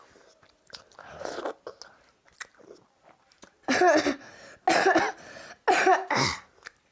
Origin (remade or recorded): recorded